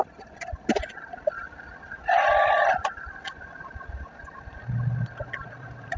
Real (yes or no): yes